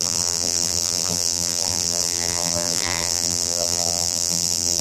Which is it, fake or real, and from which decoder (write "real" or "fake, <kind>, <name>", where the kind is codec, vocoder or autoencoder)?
fake, vocoder, BigVGAN v2